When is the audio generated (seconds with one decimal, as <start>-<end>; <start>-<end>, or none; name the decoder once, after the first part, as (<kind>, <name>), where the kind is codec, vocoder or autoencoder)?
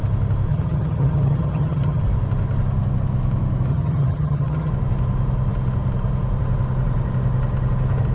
0.5-2.0 (vocoder, HiFi-GAN); 3.7-4.7